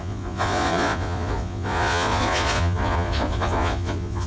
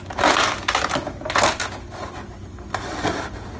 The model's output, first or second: first